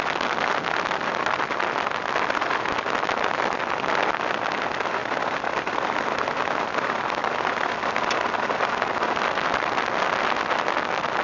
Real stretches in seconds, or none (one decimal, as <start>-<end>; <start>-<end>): 0.0-11.2